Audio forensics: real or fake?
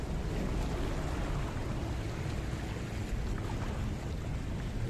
real